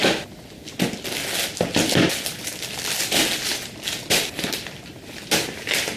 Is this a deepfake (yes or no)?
no